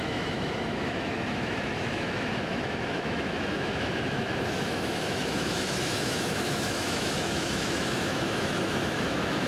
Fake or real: fake